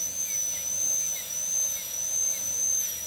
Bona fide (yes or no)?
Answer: no